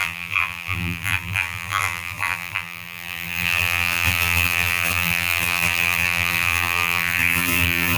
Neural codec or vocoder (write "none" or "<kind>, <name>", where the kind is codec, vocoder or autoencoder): vocoder, BigVGAN v2